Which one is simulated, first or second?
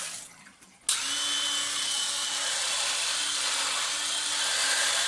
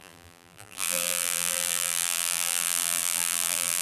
second